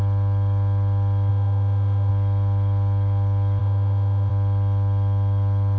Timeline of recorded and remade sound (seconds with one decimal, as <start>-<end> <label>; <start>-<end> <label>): 0.0-1.3 recorded; 1.3-2.1 remade; 2.1-3.6 recorded; 3.6-4.3 remade; 4.3-5.8 recorded